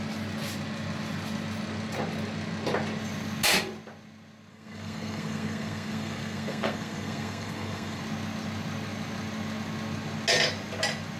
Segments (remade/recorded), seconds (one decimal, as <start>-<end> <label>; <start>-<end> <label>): 0.0-4.5 recorded; 4.5-8.0 remade; 8.0-11.2 recorded